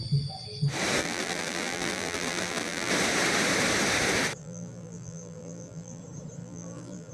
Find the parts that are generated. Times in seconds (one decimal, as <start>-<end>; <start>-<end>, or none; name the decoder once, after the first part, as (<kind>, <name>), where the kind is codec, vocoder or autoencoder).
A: 1.0-2.9 (vocoder, BigVGAN v2); 4.4-6.0; 6.4-7.1